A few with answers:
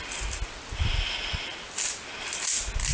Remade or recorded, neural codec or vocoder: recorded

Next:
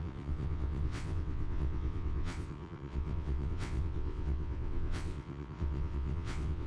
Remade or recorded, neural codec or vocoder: remade, vocoder, WaveNeXt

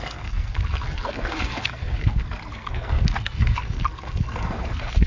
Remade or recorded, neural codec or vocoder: remade, codec, SNAC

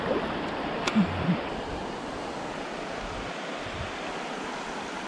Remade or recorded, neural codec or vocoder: recorded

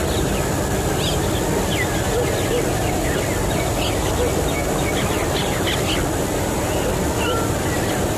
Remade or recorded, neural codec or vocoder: recorded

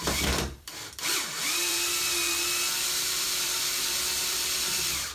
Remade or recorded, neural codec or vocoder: remade, vocoder, BigVGAN v2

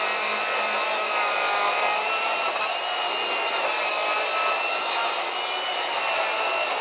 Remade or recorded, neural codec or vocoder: recorded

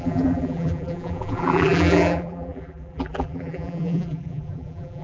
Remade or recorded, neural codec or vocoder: remade, vocoder, BigVGAN v2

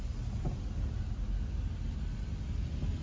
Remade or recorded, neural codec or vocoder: recorded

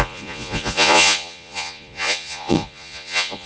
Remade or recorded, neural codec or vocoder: remade, vocoder, Vocos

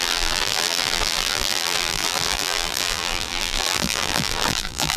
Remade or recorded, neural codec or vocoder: remade, vocoder, BigVGAN v2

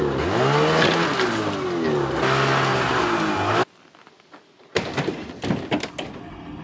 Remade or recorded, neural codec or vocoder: recorded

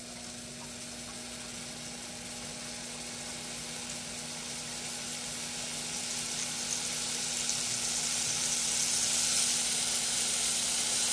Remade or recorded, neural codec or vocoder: recorded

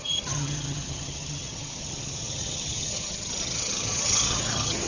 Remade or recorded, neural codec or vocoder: remade, vocoder, HiFi-GAN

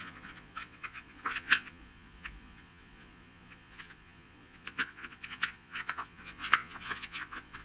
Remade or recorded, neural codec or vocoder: remade, vocoder, Vocos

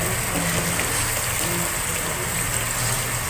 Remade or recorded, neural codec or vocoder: recorded